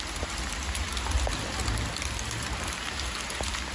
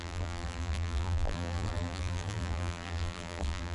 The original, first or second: first